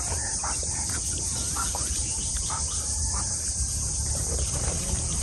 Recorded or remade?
remade